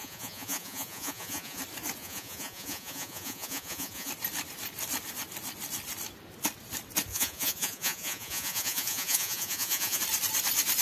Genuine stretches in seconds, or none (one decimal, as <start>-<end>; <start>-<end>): 1.6-2.0; 4.1-7.1; 10.0-10.8